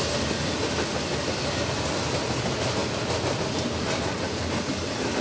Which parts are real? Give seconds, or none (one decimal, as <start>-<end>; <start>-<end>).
0.0-5.2